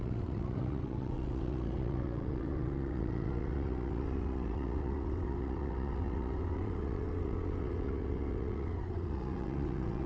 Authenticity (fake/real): fake